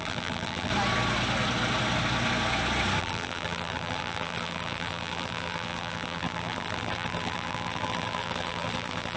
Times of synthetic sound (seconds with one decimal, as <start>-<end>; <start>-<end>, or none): 0.0-0.7; 3.0-9.2